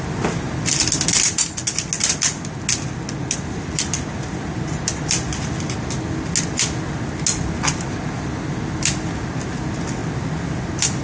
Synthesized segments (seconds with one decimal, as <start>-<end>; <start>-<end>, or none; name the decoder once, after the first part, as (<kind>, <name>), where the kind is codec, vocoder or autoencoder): none